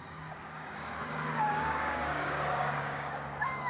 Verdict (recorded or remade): remade